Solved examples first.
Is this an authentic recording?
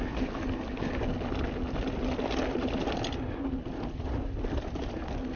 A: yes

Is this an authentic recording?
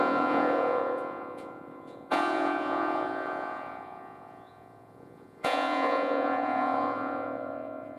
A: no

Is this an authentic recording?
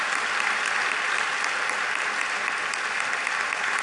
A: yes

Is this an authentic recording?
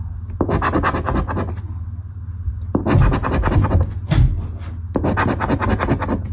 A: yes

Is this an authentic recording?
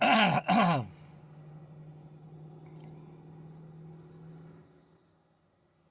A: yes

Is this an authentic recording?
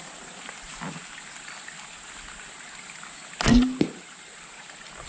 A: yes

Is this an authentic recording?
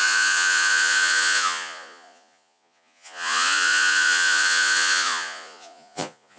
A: no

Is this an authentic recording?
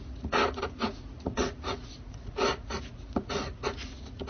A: no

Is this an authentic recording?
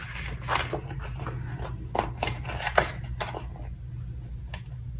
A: yes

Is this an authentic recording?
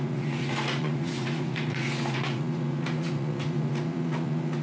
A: no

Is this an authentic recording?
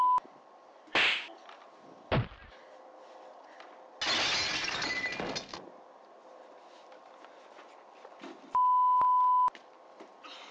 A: yes